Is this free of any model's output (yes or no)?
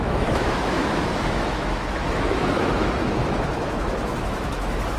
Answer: no